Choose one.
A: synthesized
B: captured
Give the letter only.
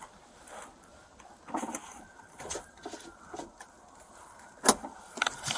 B